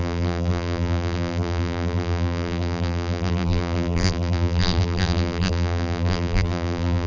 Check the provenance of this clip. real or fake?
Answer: fake